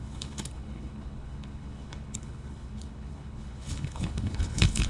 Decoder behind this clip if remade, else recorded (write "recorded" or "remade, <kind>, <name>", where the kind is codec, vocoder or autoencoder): remade, codec, HILCodec